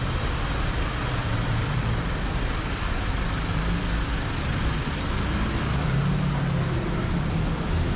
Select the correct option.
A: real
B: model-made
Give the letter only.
A